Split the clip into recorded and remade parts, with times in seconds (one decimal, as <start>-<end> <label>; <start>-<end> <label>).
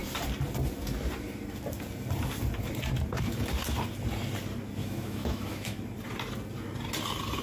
0.0-4.8 recorded; 4.8-5.8 remade; 5.8-7.4 recorded